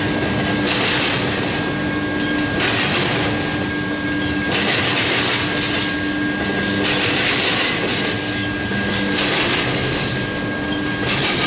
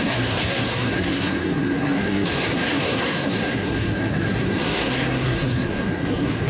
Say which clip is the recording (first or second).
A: first